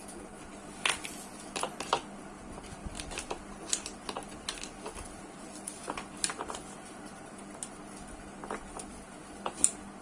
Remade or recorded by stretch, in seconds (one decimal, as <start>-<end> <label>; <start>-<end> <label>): 0.0-10.0 recorded